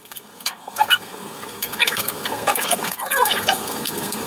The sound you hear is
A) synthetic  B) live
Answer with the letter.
A